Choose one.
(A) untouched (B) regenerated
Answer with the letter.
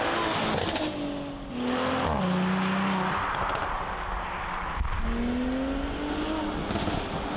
A